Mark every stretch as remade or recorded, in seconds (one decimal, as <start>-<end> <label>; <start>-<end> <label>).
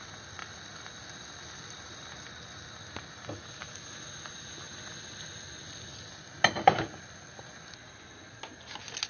0.0-9.1 recorded